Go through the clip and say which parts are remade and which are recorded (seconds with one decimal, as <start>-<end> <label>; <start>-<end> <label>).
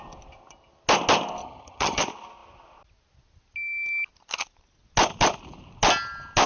0.0-1.4 recorded; 1.4-2.0 remade; 2.0-6.5 recorded